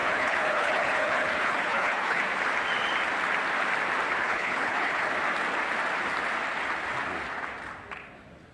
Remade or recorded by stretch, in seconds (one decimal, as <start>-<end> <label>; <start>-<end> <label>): 0.0-2.2 remade; 2.2-4.2 recorded; 4.2-5.1 remade; 5.1-8.5 recorded